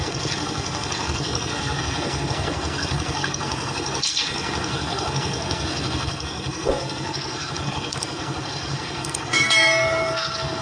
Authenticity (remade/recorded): remade